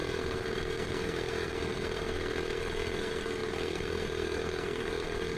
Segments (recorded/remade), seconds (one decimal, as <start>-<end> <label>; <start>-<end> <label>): 0.0-5.4 remade